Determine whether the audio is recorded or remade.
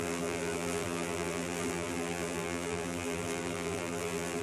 remade